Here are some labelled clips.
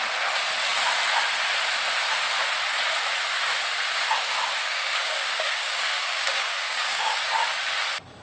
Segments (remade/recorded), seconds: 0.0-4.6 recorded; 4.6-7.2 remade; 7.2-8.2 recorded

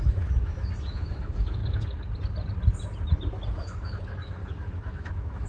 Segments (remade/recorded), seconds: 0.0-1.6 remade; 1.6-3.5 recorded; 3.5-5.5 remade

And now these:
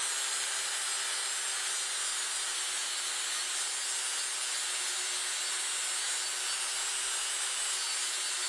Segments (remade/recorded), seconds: 0.0-8.5 recorded

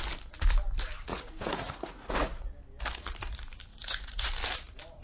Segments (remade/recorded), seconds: 0.0-1.1 recorded; 1.1-2.5 remade; 2.5-3.7 recorded; 3.7-4.3 remade; 4.3-5.0 recorded

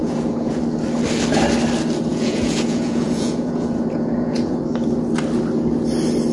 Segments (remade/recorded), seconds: 0.0-0.6 remade; 0.6-2.1 recorded; 2.1-4.6 remade; 4.6-6.3 recorded